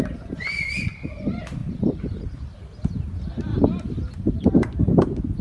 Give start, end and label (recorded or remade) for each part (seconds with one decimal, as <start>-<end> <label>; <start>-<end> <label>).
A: 0.0-3.5 remade; 3.5-4.4 recorded; 4.4-5.4 remade